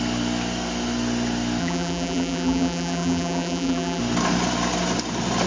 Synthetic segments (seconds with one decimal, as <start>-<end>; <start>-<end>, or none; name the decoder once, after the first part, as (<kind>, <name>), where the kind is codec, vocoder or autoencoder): 1.6-4.0 (vocoder, BigVGAN v2)